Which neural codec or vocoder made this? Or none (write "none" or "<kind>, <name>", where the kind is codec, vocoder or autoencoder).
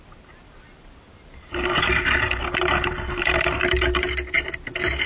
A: none